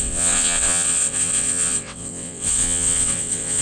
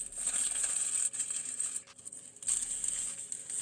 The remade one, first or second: first